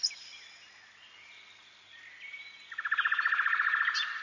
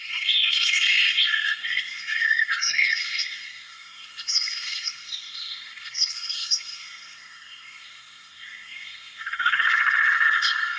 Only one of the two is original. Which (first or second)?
first